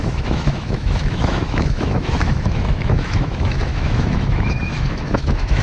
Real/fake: fake